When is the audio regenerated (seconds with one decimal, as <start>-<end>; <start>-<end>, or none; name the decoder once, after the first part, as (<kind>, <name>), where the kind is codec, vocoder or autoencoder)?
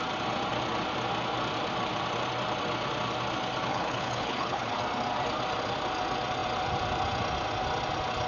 3.7-4.8 (codec, HILCodec)